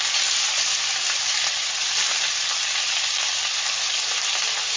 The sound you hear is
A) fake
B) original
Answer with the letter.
B